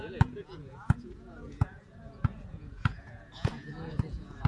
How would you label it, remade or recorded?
remade